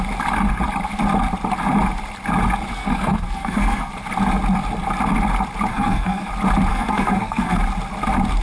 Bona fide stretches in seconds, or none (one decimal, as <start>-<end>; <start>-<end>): 0.0-2.7; 3.9-5.7; 6.3-6.7; 7.6-8.4